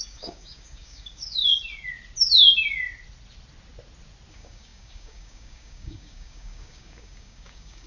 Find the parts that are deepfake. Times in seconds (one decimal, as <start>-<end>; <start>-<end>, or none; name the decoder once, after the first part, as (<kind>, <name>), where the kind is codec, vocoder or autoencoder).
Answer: 0.0-1.5 (codec, DAC); 4.3-7.9